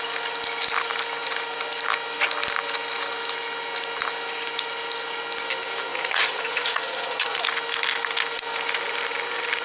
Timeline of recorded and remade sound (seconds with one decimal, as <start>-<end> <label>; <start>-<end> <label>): 0.0-5.9 recorded; 5.9-7.4 remade; 7.4-9.6 recorded